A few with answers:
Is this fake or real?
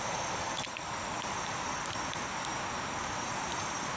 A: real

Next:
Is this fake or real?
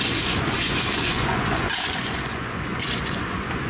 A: fake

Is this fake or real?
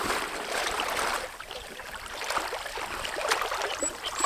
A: fake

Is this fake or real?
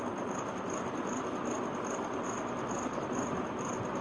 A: real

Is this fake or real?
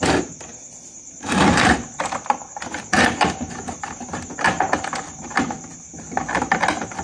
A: real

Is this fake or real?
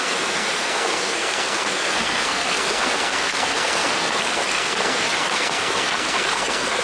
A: fake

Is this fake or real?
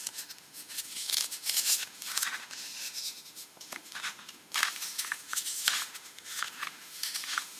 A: fake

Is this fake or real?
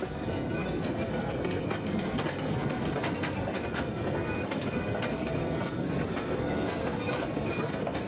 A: fake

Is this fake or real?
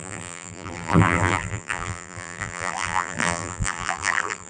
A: fake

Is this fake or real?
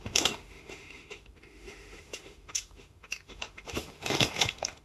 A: fake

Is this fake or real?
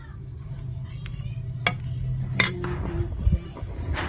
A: real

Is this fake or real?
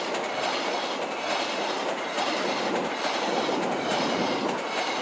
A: real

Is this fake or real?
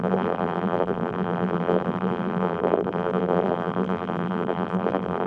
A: fake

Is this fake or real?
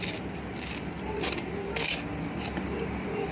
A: fake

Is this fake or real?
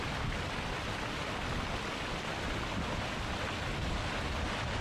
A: real